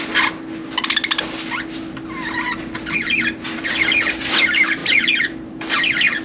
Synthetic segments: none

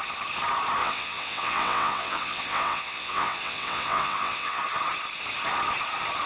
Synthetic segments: 0.8-4.6

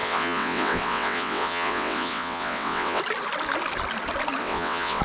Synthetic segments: 0.0-3.0; 4.4-5.0